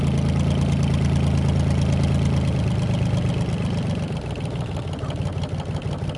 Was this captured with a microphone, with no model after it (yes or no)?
yes